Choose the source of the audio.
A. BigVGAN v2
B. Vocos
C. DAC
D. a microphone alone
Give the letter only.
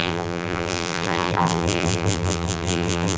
A